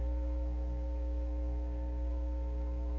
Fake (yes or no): yes